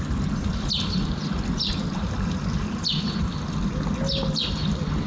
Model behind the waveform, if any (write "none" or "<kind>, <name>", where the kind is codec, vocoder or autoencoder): none